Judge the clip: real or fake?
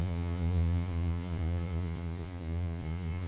fake